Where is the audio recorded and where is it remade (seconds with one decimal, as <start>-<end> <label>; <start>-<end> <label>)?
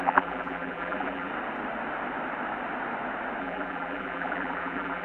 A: 0.0-1.3 remade; 1.3-3.4 recorded; 3.4-5.0 remade